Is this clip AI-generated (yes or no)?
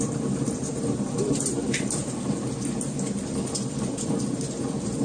no